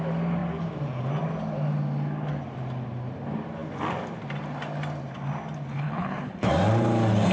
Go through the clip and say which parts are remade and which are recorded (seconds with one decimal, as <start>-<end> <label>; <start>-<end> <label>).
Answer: 0.0-5.7 recorded; 5.7-6.5 remade; 6.5-7.3 recorded